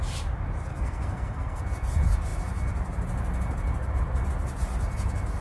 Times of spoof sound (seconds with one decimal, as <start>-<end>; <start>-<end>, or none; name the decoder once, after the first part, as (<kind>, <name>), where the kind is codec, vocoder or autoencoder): 0.7-1.6 (codec, SNAC)